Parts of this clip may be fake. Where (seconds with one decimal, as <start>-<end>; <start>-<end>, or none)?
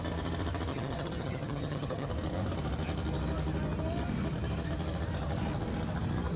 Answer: 0.7-2.1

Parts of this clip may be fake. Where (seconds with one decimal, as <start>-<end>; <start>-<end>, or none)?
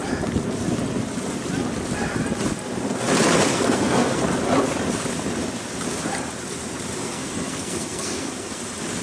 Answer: 3.5-4.2; 7.0-8.6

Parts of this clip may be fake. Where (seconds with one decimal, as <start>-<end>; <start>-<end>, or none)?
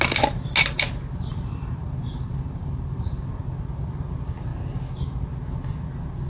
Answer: 1.3-3.1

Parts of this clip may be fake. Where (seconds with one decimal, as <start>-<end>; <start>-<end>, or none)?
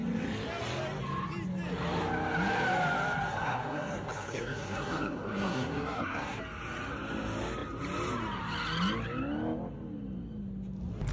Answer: 3.3-6.4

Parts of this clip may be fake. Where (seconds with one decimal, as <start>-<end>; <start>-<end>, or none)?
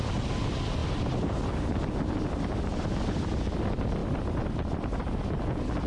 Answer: none